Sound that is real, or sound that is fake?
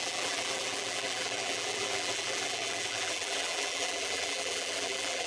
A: fake